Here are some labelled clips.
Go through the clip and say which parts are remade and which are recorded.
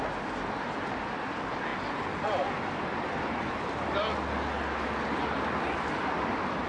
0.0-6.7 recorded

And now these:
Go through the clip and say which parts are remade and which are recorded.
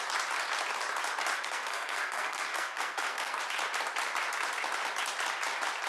0.0-1.3 recorded; 1.3-3.4 remade; 3.4-5.9 recorded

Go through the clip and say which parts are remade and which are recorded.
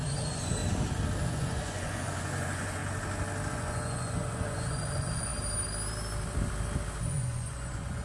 0.0-0.6 remade; 0.6-1.2 recorded; 1.2-2.8 remade; 2.8-3.5 recorded; 3.5-5.3 remade; 5.3-7.0 recorded; 7.0-8.0 remade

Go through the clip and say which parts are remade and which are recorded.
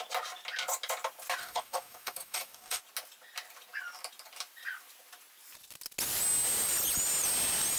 0.0-1.4 recorded; 1.4-2.8 remade; 2.8-7.8 recorded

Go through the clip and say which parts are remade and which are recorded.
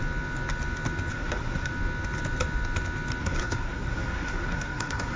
0.0-1.1 recorded; 1.1-1.7 remade; 1.7-3.2 recorded; 3.2-5.2 remade